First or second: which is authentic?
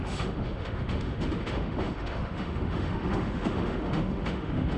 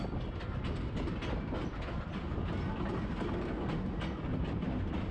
second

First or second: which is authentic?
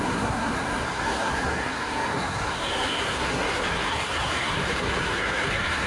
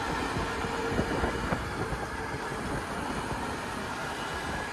second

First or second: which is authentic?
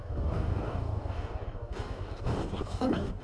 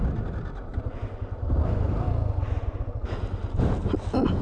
second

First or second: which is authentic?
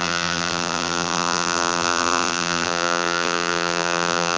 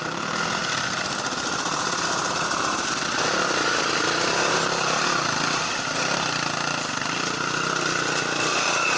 second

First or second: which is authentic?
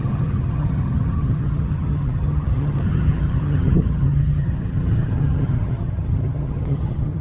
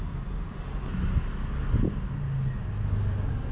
second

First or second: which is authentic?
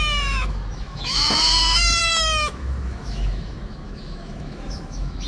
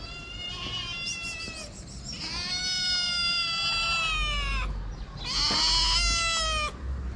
second